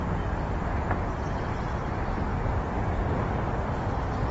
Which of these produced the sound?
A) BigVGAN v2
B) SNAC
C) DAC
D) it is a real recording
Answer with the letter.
D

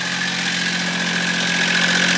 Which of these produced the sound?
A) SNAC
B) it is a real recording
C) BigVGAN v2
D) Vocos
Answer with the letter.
B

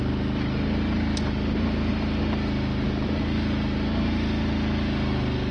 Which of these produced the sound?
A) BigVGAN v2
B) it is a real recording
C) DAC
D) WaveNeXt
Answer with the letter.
B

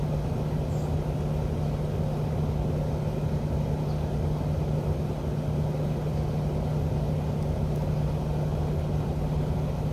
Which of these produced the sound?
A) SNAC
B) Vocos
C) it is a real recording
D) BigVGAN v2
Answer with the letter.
C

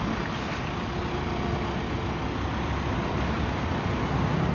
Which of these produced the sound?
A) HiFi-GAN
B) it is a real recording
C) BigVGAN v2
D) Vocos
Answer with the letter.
B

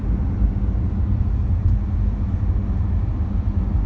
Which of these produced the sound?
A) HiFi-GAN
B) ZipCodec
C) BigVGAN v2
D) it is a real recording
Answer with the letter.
D